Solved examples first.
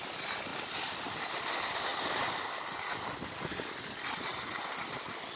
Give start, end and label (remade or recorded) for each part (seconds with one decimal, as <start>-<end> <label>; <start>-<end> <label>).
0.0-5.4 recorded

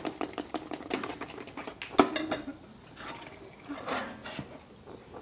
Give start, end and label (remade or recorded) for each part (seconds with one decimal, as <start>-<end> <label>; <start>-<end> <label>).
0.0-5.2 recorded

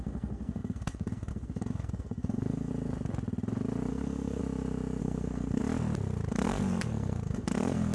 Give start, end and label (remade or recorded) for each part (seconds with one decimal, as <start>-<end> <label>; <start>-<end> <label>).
0.0-2.7 remade; 2.7-3.9 recorded; 3.9-4.4 remade; 4.4-5.0 recorded; 5.0-5.6 remade; 5.6-6.3 recorded; 6.3-7.9 remade